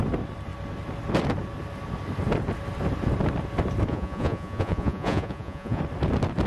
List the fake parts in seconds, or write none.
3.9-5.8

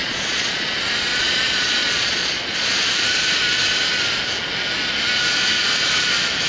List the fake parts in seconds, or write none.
0.0-0.7; 1.1-2.8